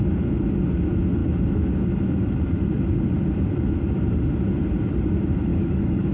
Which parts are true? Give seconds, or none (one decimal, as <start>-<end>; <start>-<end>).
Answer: 0.0-5.5